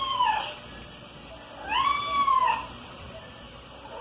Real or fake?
real